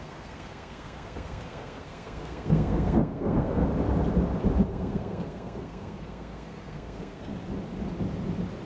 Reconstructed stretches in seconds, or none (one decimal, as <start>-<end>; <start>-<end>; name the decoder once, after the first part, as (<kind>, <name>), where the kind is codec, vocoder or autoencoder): 0.0-3.6 (codec, SNAC); 4.7-7.3